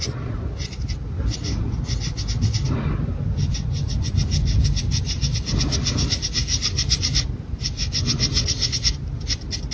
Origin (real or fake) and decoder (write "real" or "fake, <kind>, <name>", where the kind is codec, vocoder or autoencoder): real